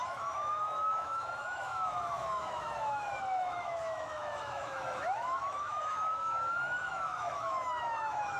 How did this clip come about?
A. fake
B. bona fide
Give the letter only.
A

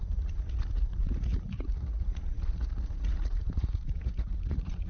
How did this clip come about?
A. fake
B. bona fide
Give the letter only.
A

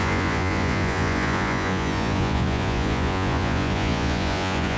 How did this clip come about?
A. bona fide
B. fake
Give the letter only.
B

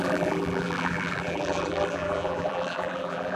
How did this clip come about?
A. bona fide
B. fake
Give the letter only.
B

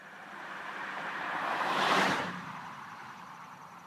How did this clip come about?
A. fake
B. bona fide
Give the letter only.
A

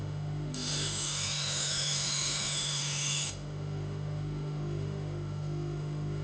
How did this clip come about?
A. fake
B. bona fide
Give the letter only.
A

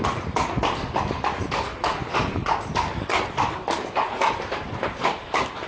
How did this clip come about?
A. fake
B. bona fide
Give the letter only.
B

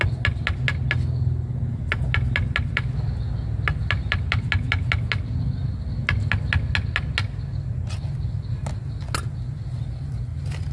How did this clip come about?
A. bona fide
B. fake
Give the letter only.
A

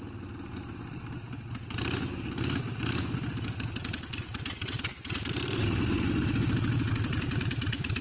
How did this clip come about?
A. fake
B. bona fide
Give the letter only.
B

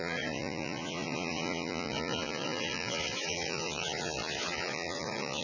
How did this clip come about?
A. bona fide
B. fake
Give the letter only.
B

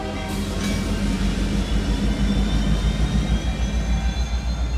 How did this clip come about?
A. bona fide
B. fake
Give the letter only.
A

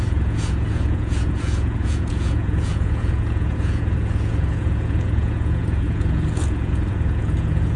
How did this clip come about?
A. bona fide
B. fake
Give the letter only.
B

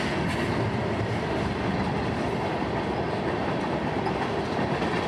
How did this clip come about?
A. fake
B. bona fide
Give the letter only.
B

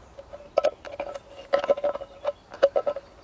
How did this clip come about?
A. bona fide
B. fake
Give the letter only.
A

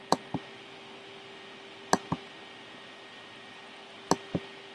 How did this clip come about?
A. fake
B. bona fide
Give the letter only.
B